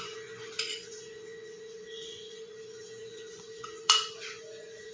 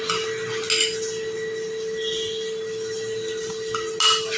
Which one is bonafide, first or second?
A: second